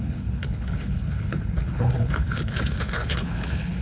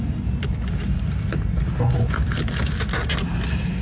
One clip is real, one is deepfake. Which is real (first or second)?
second